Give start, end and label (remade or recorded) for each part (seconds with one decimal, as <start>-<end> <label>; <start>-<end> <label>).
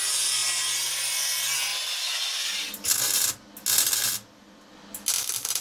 0.0-5.6 recorded